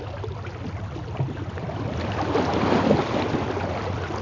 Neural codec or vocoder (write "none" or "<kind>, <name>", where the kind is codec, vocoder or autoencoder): none